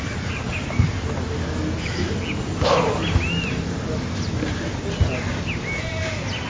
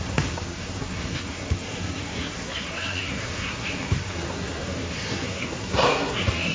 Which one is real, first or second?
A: first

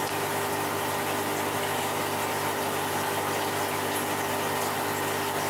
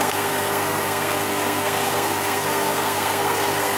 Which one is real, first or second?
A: first